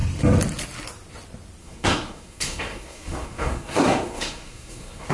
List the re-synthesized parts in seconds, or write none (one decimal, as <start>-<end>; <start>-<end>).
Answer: 1.6-5.1